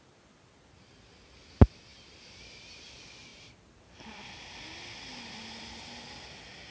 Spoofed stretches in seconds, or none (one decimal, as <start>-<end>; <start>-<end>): none